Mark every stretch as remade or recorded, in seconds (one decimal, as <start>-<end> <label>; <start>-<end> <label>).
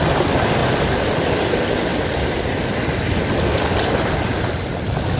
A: 0.0-5.2 recorded